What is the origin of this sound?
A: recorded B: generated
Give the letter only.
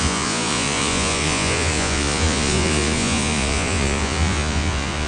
B